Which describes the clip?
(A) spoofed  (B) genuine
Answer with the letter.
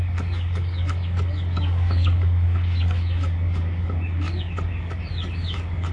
A